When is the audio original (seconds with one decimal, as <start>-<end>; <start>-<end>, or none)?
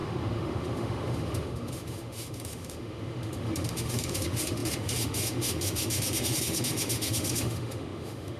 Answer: none